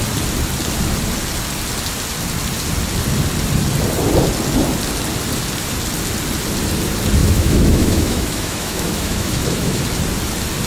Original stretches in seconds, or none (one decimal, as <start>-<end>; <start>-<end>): 0.0-7.2; 9.8-10.7